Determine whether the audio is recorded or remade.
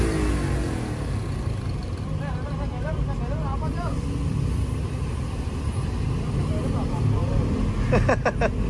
recorded